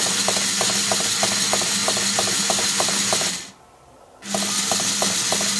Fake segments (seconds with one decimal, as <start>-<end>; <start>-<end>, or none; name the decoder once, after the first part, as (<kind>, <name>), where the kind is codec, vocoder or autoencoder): none